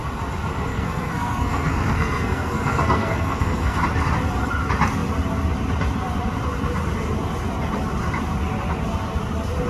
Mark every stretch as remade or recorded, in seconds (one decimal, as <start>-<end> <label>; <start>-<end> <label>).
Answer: 0.0-0.7 recorded; 0.7-3.8 remade; 3.8-9.7 recorded